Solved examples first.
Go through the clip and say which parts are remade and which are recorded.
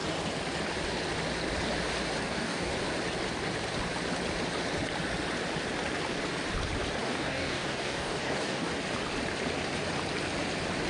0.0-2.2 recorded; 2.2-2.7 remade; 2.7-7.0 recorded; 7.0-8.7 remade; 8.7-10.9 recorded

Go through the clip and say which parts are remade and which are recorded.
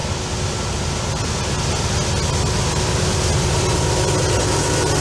0.0-5.0 recorded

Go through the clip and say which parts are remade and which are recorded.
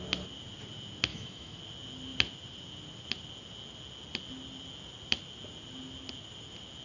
0.0-1.1 recorded; 1.1-1.6 remade; 1.6-6.8 recorded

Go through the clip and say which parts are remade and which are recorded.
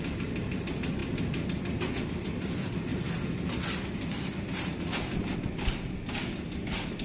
0.0-7.0 recorded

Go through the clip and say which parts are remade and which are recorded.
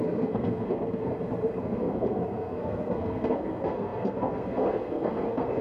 0.0-1.1 remade; 1.1-1.6 recorded; 1.6-5.6 remade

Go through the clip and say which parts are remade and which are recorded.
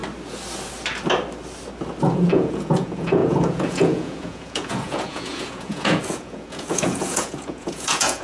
0.0-2.0 recorded; 2.0-8.2 remade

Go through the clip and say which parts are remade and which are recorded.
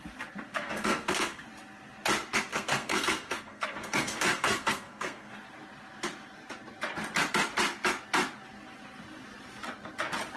0.0-0.5 recorded; 0.5-1.5 remade; 1.5-2.5 recorded; 2.5-5.3 remade; 5.3-10.4 recorded